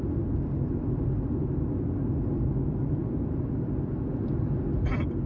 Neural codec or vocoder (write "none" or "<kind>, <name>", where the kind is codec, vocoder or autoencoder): none